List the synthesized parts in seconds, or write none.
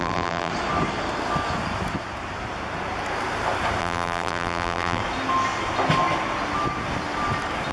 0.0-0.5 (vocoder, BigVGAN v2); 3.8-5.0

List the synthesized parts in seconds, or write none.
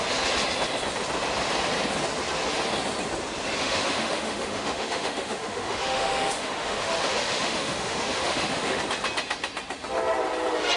3.6-8.8 (autoencoder, DAC-VAE)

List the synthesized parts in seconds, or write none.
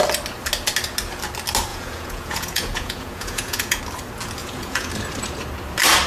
1.7-3.8 (vocoder, Vocos); 4.4-4.9